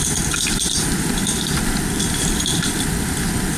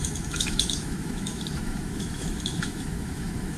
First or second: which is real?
first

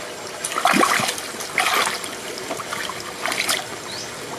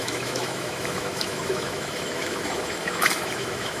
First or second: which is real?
first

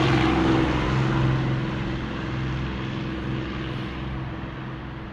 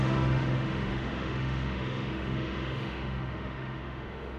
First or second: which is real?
first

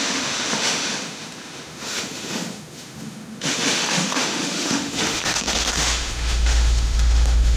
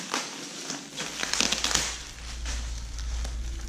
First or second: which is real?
second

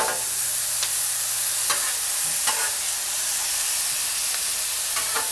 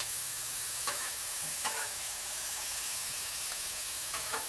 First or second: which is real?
first